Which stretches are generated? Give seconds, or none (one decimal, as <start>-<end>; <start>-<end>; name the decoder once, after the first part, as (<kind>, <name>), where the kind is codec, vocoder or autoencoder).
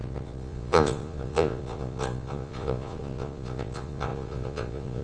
0.0-5.0 (vocoder, Vocos)